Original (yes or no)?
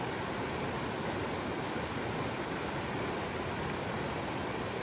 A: yes